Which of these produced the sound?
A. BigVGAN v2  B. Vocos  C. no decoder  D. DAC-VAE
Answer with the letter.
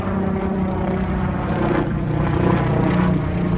C